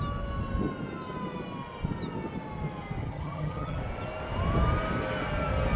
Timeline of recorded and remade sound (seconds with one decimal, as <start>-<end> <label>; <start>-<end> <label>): 0.0-3.0 recorded; 3.0-3.8 remade; 3.8-5.8 recorded